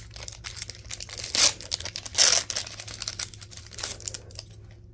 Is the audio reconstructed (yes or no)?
no